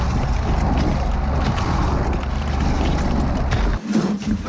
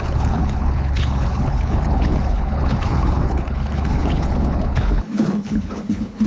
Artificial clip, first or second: second